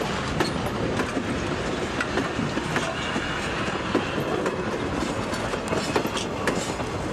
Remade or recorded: recorded